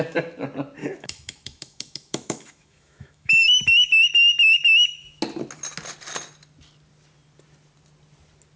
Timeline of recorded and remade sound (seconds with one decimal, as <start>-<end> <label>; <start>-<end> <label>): 0.0-0.8 recorded; 0.8-5.2 remade; 5.2-8.6 recorded